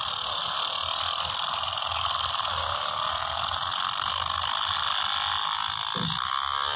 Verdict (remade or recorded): recorded